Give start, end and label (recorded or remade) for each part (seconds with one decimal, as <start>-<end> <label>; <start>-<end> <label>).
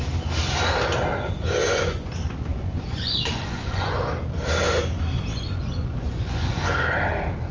0.0-1.6 recorded; 1.6-2.1 remade; 2.1-2.5 recorded; 2.5-4.1 remade; 4.1-5.3 recorded; 5.3-6.8 remade; 6.8-7.5 recorded